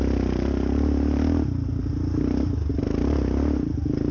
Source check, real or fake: real